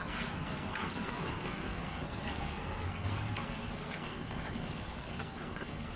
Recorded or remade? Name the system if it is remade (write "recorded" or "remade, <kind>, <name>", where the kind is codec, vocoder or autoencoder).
remade, codec, SNAC